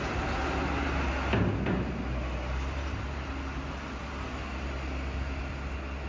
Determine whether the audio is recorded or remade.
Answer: recorded